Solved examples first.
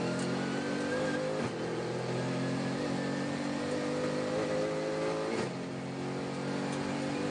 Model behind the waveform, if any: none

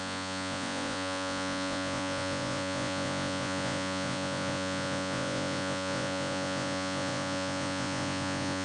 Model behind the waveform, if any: vocoder, Vocos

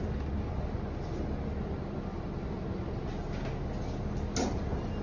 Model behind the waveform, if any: none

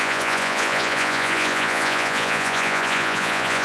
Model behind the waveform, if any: vocoder, Vocos